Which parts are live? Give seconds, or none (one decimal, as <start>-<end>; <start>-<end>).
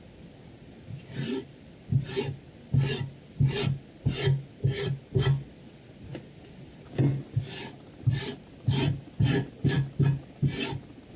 0.0-11.2